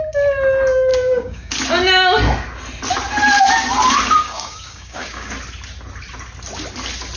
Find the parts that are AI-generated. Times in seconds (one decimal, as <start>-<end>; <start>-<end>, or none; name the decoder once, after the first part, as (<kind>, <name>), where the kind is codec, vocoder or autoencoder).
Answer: 0.9-1.5 (codec, DAC); 4.2-5.3